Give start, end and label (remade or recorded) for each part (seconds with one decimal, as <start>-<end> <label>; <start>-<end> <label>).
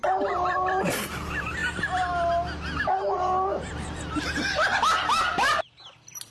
0.0-1.6 remade; 1.6-4.0 recorded; 4.0-6.3 remade